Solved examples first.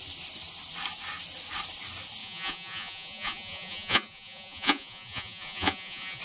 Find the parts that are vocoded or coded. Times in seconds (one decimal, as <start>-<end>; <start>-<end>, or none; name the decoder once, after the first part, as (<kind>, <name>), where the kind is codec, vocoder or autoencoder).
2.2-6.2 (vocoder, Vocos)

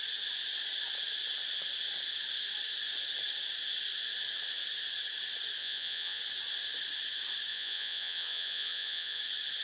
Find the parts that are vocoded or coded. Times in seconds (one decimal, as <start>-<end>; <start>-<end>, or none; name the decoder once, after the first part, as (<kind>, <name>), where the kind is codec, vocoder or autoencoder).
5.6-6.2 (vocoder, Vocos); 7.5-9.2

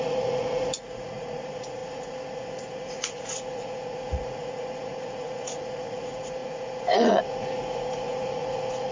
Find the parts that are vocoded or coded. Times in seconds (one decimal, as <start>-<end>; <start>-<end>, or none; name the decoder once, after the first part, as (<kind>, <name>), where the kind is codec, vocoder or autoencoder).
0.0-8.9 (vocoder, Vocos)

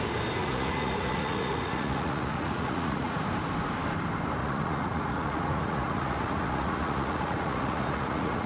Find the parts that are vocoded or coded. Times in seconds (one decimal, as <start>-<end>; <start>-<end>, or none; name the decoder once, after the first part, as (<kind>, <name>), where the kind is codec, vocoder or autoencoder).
0.4-3.2 (vocoder, Vocos); 4.4-8.5

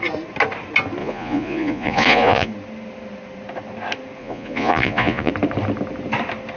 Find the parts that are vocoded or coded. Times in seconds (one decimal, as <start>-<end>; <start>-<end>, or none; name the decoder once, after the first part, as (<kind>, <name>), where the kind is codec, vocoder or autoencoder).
1.0-2.5 (vocoder, Vocos); 4.2-5.3

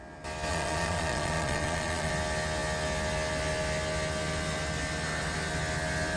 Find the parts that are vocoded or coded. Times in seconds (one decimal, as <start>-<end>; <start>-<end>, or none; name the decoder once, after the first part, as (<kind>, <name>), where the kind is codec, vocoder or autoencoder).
0.5-2.1 (vocoder, Vocos)